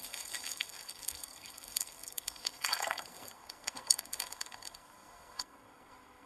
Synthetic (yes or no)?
yes